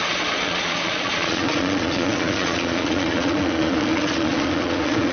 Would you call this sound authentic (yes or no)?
no